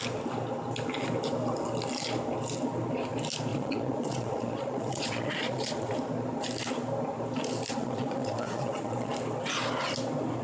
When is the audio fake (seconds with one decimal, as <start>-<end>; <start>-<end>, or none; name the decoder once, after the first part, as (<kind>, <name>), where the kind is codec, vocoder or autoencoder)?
3.5-5.9 (vocoder, Vocos); 7.7-9.1